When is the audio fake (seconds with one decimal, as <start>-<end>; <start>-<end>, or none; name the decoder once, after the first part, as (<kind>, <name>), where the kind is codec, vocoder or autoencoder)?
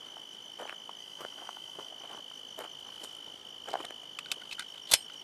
1.0-1.9 (autoencoder, DAC-VAE)